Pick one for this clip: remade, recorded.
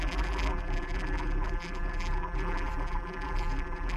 remade